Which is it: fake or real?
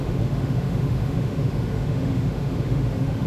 fake